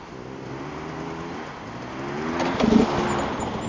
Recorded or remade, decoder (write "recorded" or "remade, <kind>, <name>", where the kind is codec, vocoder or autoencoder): recorded